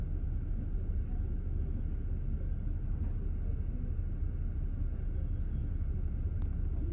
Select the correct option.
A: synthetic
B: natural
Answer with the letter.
B